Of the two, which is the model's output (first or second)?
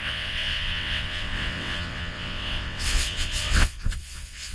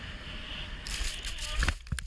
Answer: first